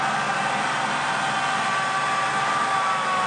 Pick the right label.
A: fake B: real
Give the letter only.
B